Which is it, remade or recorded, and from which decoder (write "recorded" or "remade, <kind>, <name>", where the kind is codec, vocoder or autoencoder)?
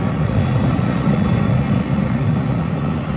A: remade, vocoder, Vocos